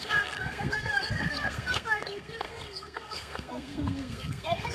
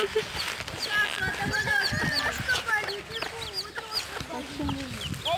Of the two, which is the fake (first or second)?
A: first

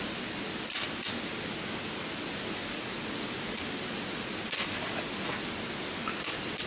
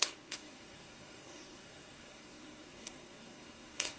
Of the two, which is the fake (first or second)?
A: second